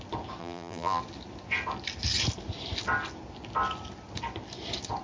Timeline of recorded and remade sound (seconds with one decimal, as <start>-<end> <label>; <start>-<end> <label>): 0.0-0.4 recorded; 0.4-1.0 remade; 1.0-5.0 recorded